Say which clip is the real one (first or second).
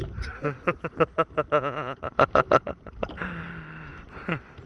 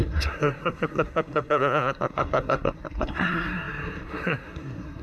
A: first